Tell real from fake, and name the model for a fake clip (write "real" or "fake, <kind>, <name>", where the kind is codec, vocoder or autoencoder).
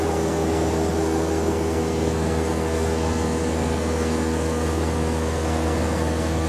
fake, codec, SNAC